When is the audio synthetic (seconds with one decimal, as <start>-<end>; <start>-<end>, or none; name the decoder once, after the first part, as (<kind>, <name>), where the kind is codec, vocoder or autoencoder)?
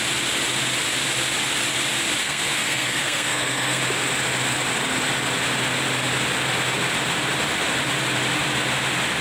2.2-3.8 (codec, SNAC)